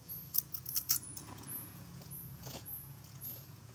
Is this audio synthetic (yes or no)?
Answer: yes